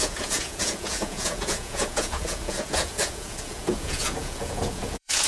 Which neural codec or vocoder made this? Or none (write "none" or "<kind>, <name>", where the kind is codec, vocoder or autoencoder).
vocoder, Vocos